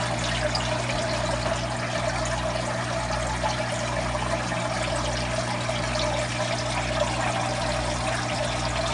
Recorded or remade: recorded